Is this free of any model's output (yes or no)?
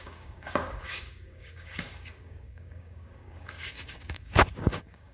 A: no